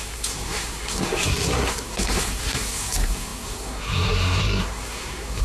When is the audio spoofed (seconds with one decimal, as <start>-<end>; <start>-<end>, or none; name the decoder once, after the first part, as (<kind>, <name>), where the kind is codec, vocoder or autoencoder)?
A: 0.0-5.4 (codec, SNAC)